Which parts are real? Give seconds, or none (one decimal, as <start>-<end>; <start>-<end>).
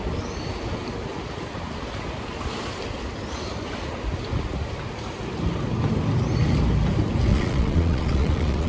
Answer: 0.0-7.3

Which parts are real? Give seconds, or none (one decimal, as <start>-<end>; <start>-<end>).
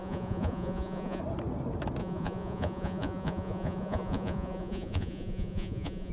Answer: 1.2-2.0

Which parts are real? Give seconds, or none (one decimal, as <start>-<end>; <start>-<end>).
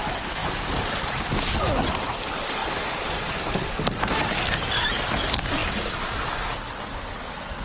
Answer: 0.0-7.6